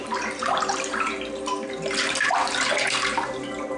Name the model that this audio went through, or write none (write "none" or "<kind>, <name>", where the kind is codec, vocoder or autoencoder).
vocoder, BigVGAN v2